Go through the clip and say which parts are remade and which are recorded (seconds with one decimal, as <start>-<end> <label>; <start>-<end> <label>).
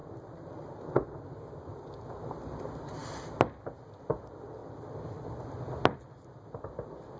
0.0-7.2 recorded